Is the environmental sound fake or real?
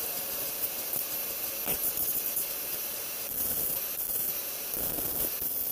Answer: real